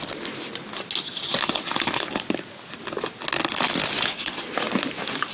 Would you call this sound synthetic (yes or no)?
no